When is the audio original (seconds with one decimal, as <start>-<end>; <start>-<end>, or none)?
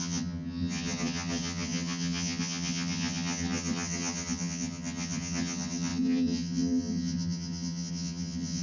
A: none